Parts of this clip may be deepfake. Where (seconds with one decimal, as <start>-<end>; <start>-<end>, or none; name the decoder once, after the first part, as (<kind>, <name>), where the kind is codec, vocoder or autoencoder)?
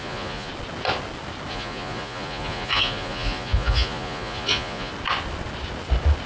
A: 0.0-0.5 (vocoder, Vocos); 1.5-4.9